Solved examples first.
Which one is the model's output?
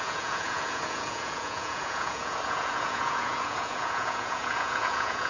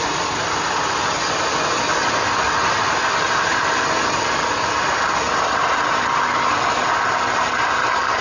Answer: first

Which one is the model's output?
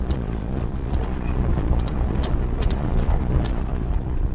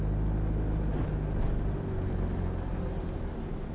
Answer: first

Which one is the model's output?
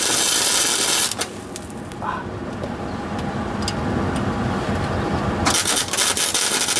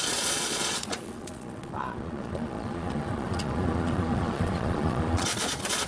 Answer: second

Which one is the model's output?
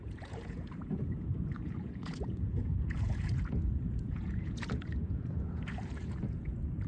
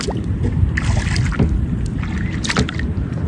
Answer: first